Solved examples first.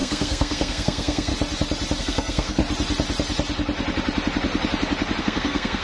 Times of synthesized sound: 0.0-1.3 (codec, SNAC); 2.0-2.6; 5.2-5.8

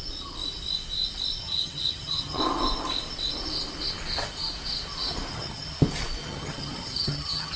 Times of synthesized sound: 1.4-2.4 (vocoder, HiFi-GAN); 5.3-5.8; 6.2-7.6

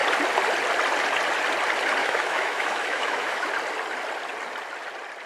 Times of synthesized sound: 2.0-3.5 (autoencoder, DAC-VAE)

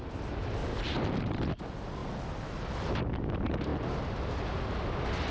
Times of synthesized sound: 0.6-1.4 (vocoder, BigVGAN v2)

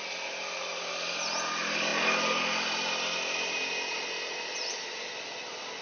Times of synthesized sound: none

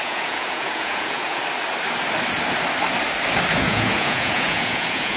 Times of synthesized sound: 0.0-1.4 (vocoder, Vocos); 3.5-5.2

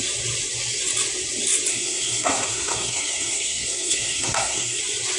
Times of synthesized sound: 1.7-4.8 (codec, SNAC)

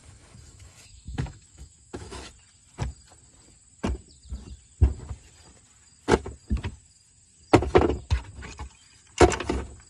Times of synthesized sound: 0.0-2.3 (autoencoder, DAC-VAE)